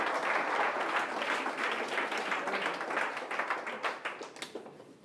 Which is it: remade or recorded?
recorded